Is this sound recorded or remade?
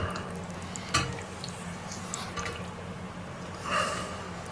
recorded